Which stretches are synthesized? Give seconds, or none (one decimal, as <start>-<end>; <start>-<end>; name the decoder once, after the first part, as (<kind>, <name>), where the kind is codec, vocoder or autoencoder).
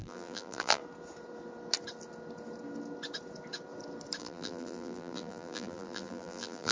0.0-0.8 (vocoder, BigVGAN v2); 4.2-6.7